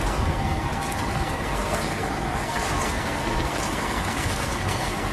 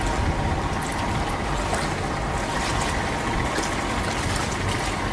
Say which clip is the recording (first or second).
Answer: second